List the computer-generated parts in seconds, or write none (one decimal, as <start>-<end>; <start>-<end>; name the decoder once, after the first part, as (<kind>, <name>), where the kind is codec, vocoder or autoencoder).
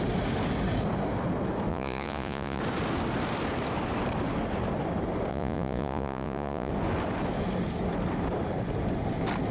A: 1.7-2.6 (vocoder, Vocos); 5.3-6.7